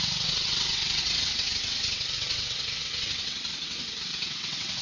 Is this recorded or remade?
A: remade